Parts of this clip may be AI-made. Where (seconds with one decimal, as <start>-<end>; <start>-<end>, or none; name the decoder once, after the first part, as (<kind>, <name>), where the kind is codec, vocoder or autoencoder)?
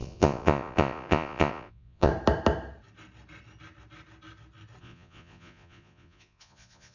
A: 0.0-2.1 (vocoder, Vocos); 4.8-6.9